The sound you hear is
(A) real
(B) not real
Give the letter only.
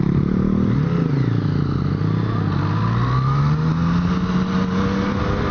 A